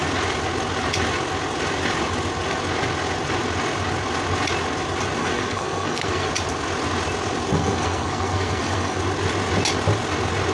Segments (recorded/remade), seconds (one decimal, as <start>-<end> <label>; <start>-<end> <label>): 0.0-5.2 recorded; 5.2-6.3 remade; 6.3-7.5 recorded; 7.5-9.0 remade; 9.0-10.5 recorded